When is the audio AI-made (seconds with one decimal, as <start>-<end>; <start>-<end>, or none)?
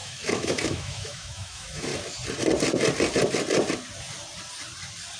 0.0-1.9